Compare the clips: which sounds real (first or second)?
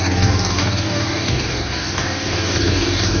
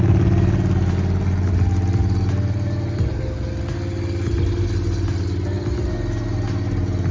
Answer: second